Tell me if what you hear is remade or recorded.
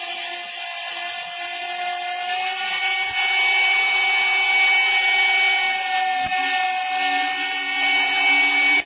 recorded